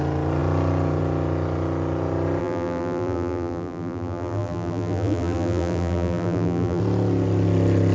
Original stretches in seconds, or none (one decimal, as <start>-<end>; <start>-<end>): 0.0-2.4; 6.8-7.9